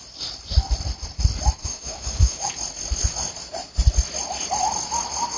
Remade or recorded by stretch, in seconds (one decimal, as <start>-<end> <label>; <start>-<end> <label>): 0.0-1.6 recorded; 1.6-2.5 remade; 2.5-5.4 recorded